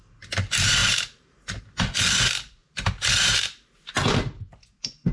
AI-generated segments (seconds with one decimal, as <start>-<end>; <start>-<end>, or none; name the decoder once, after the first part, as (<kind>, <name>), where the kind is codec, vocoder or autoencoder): 0.8-1.6 (vocoder, BigVGAN v2); 2.6-3.1